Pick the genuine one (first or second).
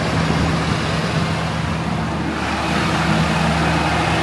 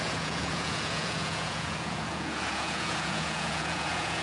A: first